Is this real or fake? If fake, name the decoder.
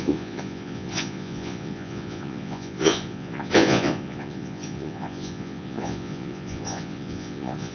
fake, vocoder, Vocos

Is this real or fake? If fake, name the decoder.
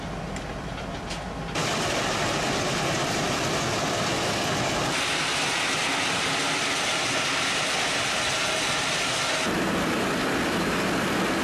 real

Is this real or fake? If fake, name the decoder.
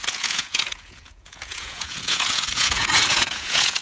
fake, vocoder, Vocos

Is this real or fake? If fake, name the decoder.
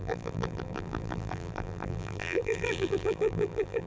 fake, vocoder, BigVGAN v2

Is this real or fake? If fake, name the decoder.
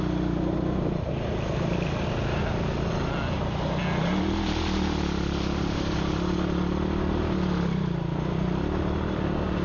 real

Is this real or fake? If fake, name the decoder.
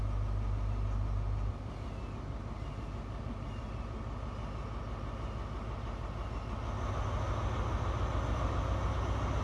real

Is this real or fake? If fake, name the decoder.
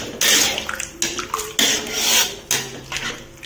real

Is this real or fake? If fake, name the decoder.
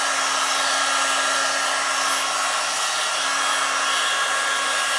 real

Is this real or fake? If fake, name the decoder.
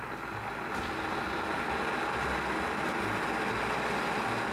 real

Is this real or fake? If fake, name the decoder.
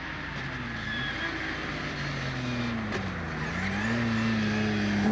real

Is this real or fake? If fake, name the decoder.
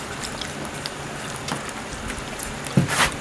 real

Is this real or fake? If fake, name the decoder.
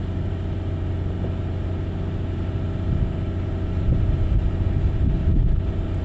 real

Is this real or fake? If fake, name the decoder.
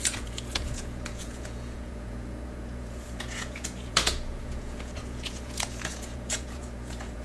fake, vocoder, Vocos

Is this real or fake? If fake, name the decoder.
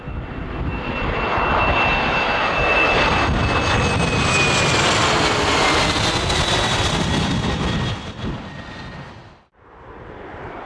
real